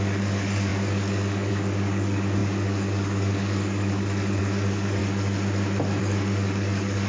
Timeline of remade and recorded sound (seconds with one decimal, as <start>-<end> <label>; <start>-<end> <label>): 0.0-5.0 remade; 5.0-6.0 recorded; 6.0-7.1 remade